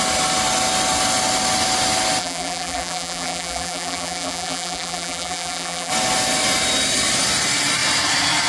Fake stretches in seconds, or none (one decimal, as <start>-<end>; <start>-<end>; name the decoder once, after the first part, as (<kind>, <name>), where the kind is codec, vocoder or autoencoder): 2.2-5.9 (vocoder, BigVGAN v2)